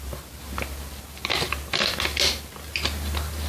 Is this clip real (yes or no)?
yes